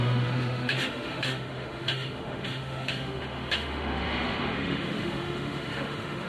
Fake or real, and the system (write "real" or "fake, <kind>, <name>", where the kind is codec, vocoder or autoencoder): fake, autoencoder, DAC-VAE